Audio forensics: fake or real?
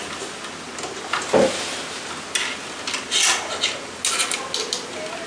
real